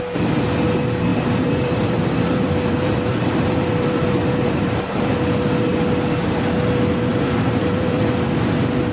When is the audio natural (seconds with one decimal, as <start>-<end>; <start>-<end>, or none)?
0.0-1.1; 4.9-7.1; 8.1-8.9